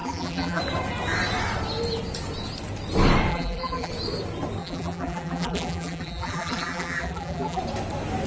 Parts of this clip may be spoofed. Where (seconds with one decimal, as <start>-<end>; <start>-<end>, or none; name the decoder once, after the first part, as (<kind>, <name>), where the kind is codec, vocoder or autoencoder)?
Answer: 0.0-0.6 (vocoder, BigVGAN v2); 3.3-3.9; 4.6-7.6